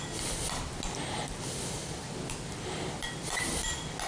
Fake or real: real